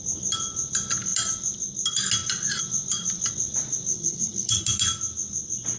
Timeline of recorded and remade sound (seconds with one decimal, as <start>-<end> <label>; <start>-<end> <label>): 0.0-3.9 recorded; 3.9-4.6 remade; 4.6-5.8 recorded